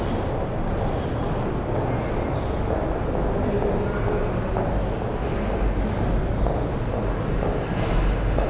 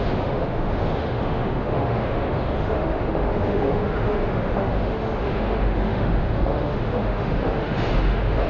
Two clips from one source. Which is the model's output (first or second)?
second